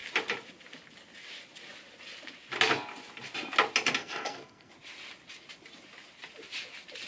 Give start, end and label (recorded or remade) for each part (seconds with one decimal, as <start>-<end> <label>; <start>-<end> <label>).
0.0-4.0 recorded; 4.0-4.7 remade; 4.7-7.1 recorded